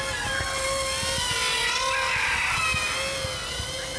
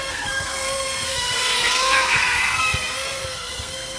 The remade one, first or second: second